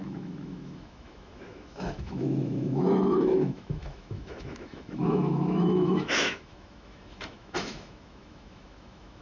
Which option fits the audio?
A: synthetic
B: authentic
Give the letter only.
A